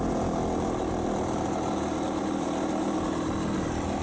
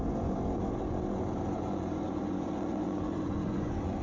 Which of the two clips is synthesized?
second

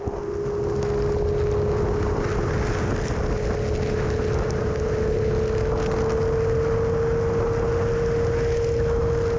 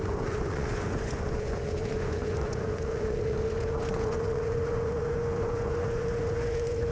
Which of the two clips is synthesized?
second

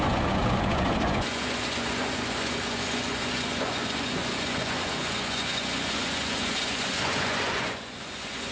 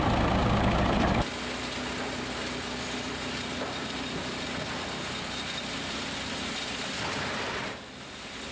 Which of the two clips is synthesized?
first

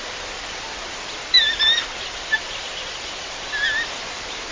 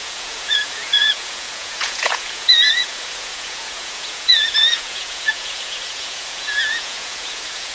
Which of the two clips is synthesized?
second